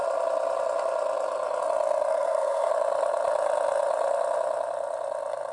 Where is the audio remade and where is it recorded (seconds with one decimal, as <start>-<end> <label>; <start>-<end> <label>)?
0.0-2.1 recorded; 2.1-2.7 remade; 2.7-5.5 recorded